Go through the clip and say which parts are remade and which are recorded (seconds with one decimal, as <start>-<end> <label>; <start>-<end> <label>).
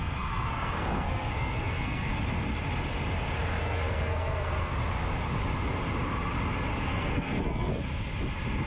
0.0-2.1 remade; 2.1-3.6 recorded; 3.6-4.7 remade; 4.7-6.8 recorded; 6.8-7.8 remade; 7.8-8.7 recorded